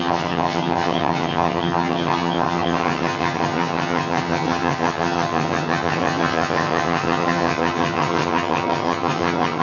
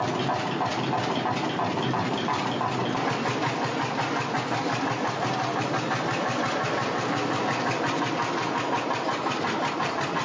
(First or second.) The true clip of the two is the second